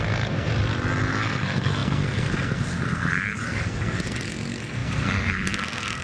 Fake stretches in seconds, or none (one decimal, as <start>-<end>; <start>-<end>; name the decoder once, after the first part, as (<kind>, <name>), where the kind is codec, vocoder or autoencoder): 0.0-0.5 (codec, SNAC); 1.1-6.0